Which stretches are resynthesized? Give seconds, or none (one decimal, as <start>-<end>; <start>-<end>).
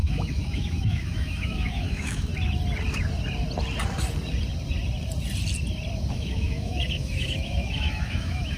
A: 0.0-2.3; 6.1-8.6